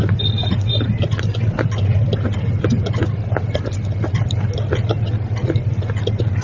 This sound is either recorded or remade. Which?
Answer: recorded